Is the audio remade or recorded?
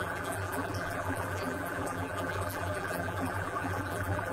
remade